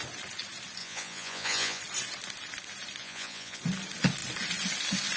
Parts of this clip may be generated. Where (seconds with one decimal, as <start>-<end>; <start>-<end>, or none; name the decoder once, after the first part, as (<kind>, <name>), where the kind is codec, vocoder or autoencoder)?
0.8-1.8 (vocoder, Vocos); 3.0-3.6

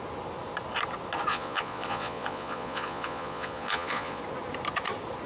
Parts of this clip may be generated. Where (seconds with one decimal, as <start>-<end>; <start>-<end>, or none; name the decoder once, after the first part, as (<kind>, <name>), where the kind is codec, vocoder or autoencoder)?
1.3-4.2 (vocoder, Vocos)

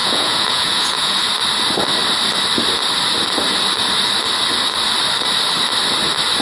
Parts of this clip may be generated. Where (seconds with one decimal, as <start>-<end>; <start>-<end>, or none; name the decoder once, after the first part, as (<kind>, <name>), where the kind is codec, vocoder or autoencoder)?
0.0-1.3 (vocoder, Vocos)